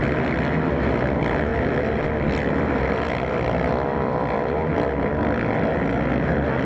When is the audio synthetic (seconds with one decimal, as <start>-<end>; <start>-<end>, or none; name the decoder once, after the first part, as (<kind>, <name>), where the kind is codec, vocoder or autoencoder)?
none